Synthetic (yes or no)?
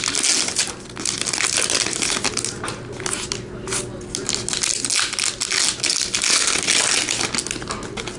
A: no